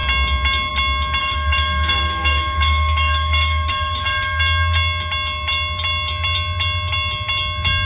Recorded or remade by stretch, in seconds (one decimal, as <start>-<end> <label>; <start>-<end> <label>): 0.0-1.2 recorded; 1.2-4.4 remade; 4.4-7.9 recorded